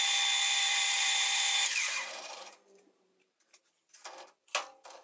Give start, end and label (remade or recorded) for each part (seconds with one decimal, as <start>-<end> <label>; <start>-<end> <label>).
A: 0.0-0.6 recorded; 0.6-3.6 remade; 3.6-5.0 recorded